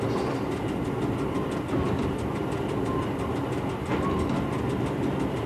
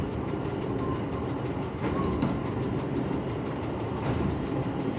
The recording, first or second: first